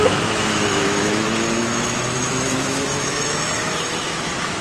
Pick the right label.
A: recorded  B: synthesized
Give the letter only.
B